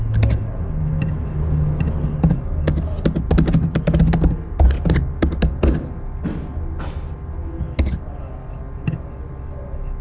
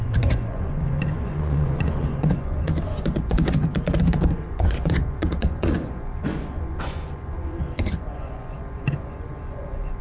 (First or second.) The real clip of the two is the first